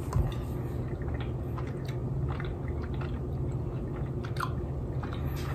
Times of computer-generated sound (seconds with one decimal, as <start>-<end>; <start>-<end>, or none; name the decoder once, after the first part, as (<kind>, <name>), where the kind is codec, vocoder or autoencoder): none